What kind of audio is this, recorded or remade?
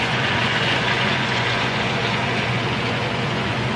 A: remade